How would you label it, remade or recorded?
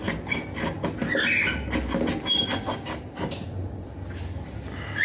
recorded